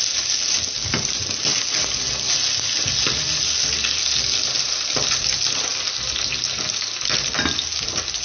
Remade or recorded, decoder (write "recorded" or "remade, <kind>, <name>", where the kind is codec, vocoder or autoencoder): recorded